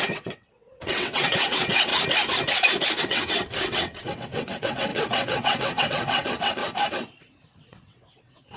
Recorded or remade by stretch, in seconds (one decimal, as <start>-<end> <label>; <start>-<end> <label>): 0.0-1.9 remade; 1.9-3.0 recorded; 3.0-6.6 remade; 6.6-7.2 recorded; 7.2-8.6 remade

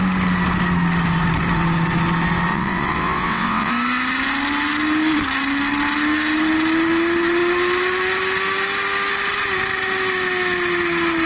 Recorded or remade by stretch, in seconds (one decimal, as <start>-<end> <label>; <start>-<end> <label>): 0.0-2.5 recorded; 2.5-3.7 remade; 3.7-11.3 recorded

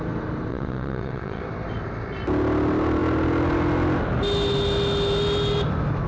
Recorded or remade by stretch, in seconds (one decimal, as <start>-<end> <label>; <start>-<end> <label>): 0.0-0.5 recorded; 0.5-1.4 remade; 1.4-6.1 recorded

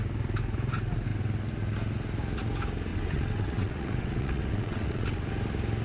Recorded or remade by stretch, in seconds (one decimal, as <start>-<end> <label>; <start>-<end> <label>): 0.0-2.9 recorded; 2.9-5.2 remade; 5.2-5.8 recorded

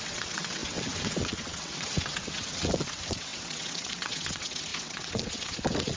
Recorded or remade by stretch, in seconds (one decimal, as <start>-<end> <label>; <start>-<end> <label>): 0.0-6.0 remade

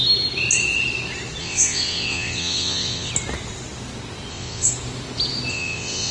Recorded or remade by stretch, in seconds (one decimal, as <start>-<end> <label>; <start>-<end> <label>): 0.0-1.4 recorded; 1.4-3.1 remade; 3.1-4.3 recorded; 4.3-4.7 remade; 4.7-5.5 recorded; 5.5-6.1 remade

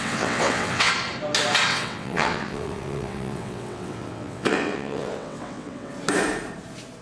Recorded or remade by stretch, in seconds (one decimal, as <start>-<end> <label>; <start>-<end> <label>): 0.0-0.9 remade; 0.9-1.7 recorded; 1.7-5.9 remade; 5.9-7.0 recorded